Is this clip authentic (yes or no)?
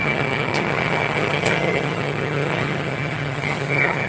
no